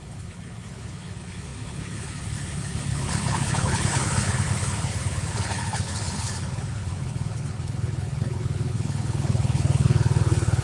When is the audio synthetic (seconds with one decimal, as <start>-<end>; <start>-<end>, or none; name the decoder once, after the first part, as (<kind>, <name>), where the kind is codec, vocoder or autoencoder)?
0.0-10.6 (codec, HILCodec)